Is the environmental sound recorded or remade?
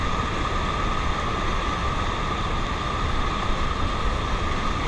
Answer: recorded